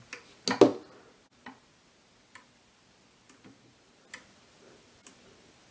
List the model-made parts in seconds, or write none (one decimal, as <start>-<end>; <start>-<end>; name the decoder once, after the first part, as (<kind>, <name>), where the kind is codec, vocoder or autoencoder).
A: none

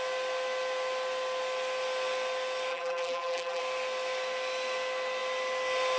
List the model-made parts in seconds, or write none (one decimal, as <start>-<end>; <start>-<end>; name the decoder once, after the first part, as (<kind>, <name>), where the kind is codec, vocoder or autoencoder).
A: 2.7-3.6 (vocoder, BigVGAN v2)

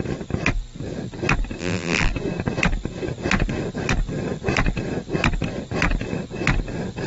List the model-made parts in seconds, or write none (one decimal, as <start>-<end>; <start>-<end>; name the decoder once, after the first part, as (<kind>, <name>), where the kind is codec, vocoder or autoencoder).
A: 1.6-2.1 (vocoder, BigVGAN v2)

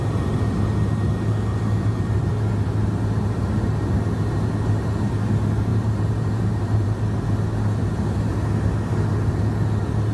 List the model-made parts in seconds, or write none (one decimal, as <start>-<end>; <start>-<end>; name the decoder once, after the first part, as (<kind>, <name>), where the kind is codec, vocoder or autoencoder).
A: 1.5-2.4 (vocoder, BigVGAN v2); 5.7-7.0